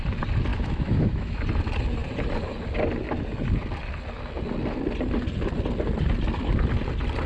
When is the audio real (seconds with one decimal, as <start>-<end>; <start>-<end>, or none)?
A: 0.0-0.5; 1.4-7.3